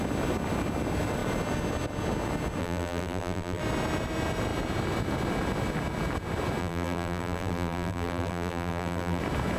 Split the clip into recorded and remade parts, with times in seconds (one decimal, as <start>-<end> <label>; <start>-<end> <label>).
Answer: 0.0-2.6 recorded; 2.6-3.6 remade; 3.6-6.6 recorded; 6.6-9.2 remade; 9.2-9.6 recorded